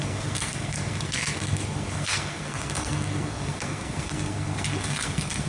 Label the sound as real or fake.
fake